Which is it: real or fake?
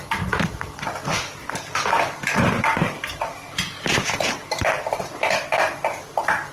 fake